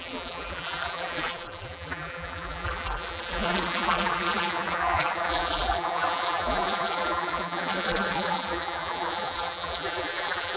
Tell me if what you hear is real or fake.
fake